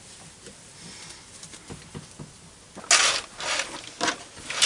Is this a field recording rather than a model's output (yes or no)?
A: yes